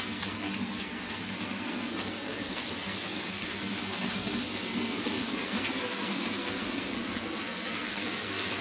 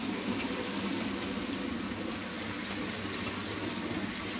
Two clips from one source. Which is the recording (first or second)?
second